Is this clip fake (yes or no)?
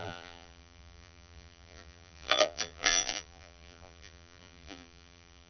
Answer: yes